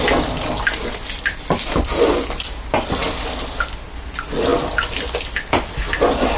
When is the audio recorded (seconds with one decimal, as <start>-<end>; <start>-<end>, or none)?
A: 0.0-6.4